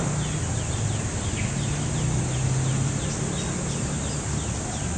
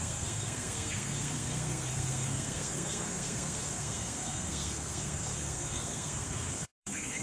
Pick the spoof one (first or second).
second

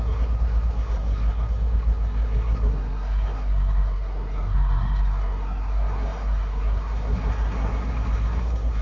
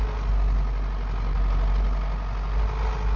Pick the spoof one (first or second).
first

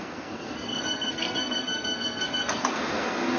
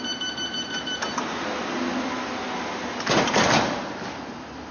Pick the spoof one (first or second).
first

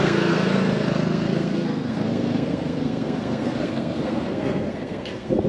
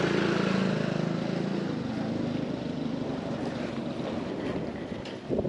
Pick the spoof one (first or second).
first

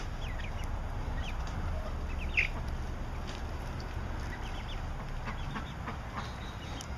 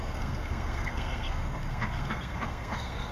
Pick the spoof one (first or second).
second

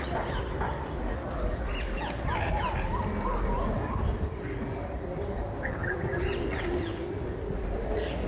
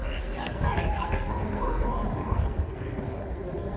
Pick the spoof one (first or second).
second